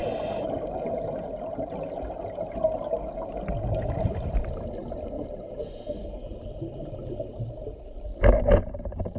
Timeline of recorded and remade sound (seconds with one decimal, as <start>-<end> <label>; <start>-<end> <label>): 0.0-9.2 recorded